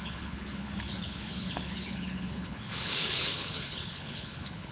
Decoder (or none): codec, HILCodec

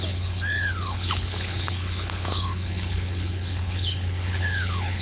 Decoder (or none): codec, HILCodec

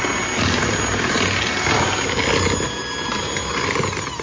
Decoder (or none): none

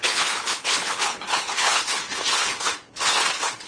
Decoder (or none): codec, HILCodec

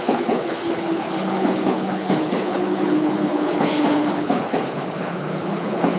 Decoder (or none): codec, HILCodec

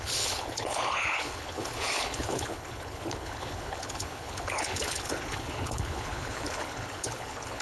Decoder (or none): codec, HILCodec